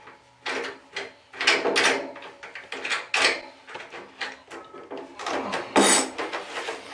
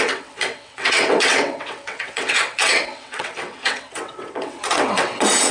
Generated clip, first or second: second